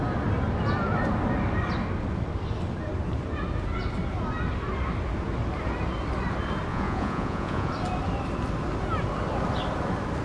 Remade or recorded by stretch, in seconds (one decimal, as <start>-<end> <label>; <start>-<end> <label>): 0.0-6.7 recorded; 6.7-7.7 remade; 7.7-10.2 recorded

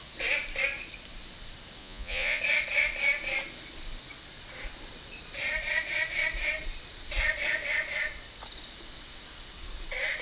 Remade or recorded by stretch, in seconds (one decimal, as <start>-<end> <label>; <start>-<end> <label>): 0.0-1.8 recorded; 1.8-2.4 remade; 2.4-10.2 recorded

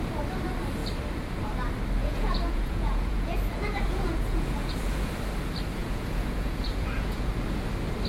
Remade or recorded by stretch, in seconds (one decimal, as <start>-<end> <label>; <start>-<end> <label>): 0.0-2.0 recorded; 2.0-5.1 remade; 5.1-5.8 recorded; 5.8-7.3 remade; 7.3-8.1 recorded

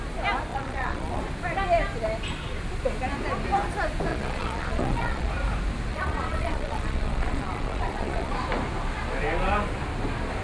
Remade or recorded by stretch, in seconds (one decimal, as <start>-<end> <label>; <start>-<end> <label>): 0.0-0.5 recorded; 0.5-1.2 remade; 1.2-4.1 recorded; 4.1-5.3 remade; 5.3-5.9 recorded; 5.9-8.3 remade; 8.3-10.4 recorded

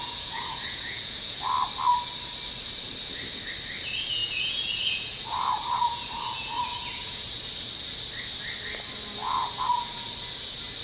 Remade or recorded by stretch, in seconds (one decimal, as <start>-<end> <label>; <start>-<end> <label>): 0.0-1.5 remade; 1.5-4.2 recorded; 4.2-7.3 remade; 7.3-9.2 recorded; 9.2-10.1 remade; 10.1-10.8 recorded